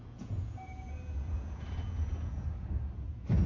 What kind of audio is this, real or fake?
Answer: fake